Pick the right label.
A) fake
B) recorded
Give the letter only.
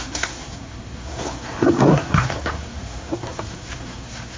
A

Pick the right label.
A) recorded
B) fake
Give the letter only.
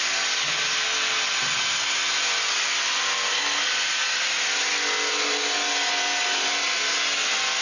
A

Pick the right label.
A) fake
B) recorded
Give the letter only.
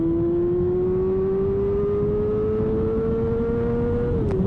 B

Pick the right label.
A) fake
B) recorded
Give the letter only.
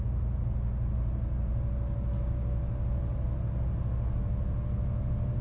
B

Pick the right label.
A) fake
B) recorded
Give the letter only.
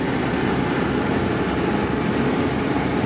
B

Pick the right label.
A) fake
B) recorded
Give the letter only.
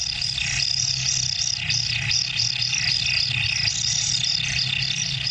B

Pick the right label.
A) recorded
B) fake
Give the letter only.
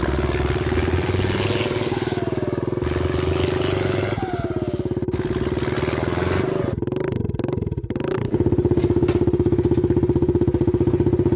A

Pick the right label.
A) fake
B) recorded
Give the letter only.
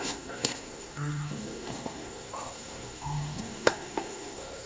A